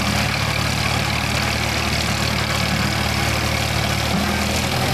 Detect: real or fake real